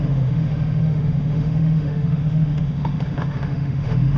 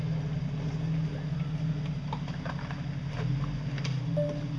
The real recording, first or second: second